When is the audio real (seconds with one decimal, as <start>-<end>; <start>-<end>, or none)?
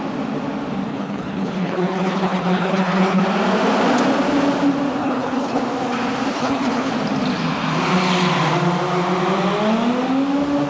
0.0-0.9; 3.2-5.0; 5.6-6.3; 6.9-10.7